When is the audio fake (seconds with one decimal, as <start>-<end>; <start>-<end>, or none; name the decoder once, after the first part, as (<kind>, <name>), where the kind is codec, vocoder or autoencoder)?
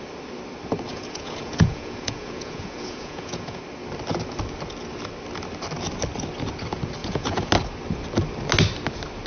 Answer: 0.9-3.6 (vocoder, Vocos); 7.0-7.5